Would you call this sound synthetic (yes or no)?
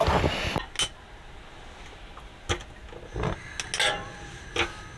no